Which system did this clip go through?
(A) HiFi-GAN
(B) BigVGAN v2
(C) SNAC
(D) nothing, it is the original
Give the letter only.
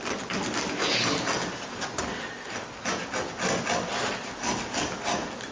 D